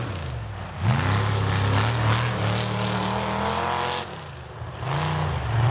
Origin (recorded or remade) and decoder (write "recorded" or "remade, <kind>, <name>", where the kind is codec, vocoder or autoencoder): recorded